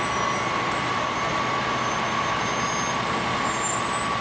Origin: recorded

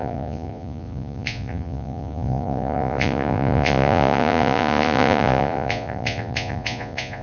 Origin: remade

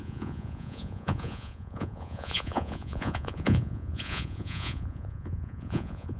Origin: remade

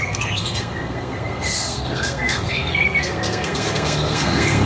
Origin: remade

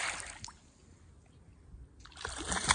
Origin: recorded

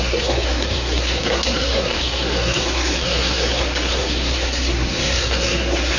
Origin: remade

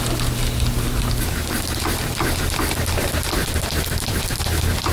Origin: recorded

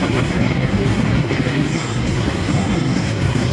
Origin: remade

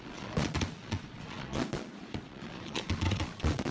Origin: remade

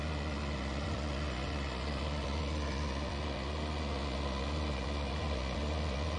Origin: remade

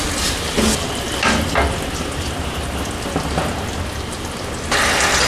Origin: recorded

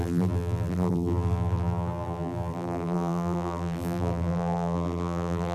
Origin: remade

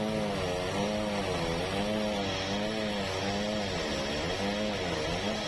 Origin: recorded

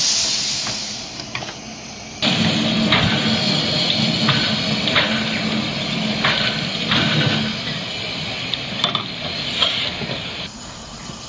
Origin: recorded